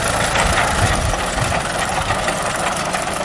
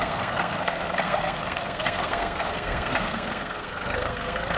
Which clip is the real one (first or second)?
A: first